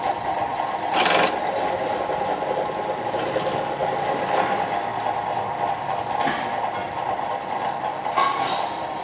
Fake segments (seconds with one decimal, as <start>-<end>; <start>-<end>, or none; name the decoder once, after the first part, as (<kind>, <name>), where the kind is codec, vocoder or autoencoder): 6.8-9.0 (vocoder, BigVGAN v2)